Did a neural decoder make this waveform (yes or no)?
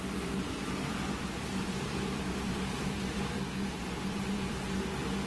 yes